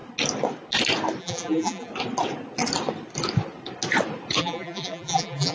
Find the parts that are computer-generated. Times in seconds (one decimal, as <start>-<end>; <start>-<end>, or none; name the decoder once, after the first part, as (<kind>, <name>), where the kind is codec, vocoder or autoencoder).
1.2-1.9 (vocoder, BigVGAN v2); 4.4-5.5